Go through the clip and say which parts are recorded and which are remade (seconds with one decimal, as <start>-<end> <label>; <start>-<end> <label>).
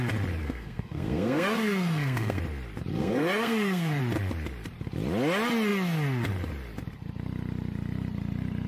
0.0-0.4 recorded; 0.4-2.4 remade; 2.4-2.9 recorded; 2.9-4.0 remade; 4.0-8.7 recorded